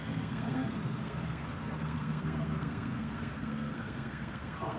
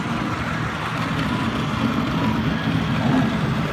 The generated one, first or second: first